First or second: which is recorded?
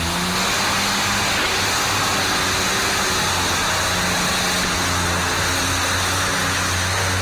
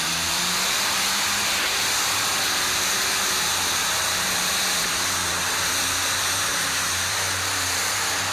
first